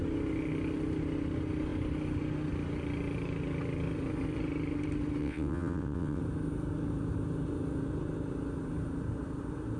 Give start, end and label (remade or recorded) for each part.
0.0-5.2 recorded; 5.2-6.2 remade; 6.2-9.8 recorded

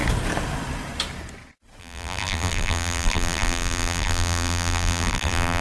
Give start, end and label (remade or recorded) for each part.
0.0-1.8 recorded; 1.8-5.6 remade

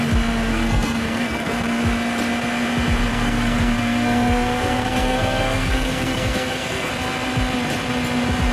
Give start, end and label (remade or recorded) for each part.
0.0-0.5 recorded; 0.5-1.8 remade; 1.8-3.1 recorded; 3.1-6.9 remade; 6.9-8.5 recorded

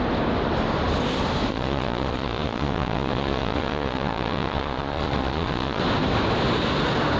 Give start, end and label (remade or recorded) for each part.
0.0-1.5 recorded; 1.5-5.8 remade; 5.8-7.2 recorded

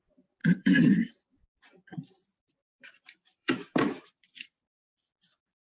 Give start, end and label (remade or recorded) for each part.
0.0-0.4 recorded; 0.4-1.1 remade; 1.1-1.9 recorded; 1.9-4.9 remade; 4.9-5.6 recorded